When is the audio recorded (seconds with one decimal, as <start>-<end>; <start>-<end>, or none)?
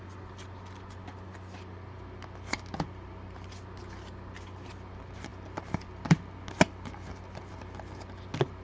0.0-8.6